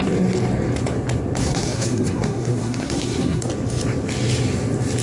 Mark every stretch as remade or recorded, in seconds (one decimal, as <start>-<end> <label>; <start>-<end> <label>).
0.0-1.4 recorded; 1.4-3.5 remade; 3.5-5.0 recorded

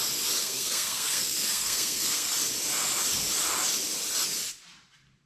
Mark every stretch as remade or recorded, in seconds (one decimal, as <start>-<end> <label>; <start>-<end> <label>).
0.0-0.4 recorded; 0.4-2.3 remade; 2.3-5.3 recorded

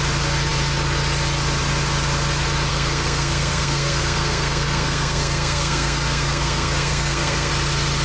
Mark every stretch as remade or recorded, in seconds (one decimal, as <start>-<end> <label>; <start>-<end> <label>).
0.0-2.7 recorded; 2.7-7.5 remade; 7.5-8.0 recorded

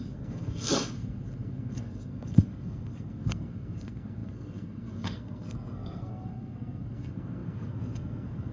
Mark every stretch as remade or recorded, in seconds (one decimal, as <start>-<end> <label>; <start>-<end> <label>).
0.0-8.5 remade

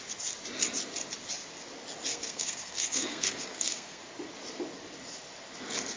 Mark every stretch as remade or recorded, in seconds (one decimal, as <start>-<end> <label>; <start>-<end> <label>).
0.0-2.1 recorded; 2.1-4.0 remade; 4.0-6.0 recorded